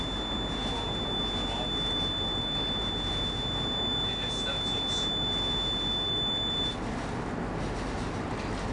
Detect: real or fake real